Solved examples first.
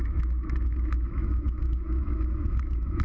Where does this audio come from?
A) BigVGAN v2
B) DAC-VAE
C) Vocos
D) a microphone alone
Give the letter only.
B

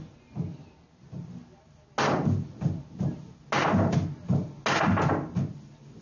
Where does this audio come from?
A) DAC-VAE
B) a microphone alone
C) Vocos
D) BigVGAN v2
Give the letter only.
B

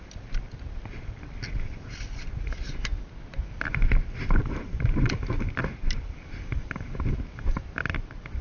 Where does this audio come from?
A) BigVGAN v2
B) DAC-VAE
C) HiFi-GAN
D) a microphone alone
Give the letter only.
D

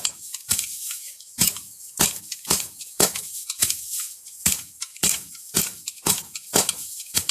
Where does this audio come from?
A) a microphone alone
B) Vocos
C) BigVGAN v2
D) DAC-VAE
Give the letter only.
D